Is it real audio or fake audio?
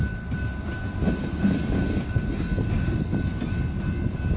real